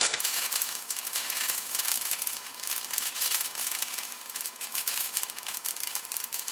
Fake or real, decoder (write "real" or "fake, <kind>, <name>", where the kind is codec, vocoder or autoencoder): fake, autoencoder, DAC-VAE